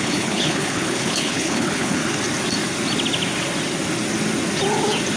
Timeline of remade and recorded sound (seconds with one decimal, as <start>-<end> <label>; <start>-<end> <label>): 0.0-2.0 remade; 2.0-5.2 recorded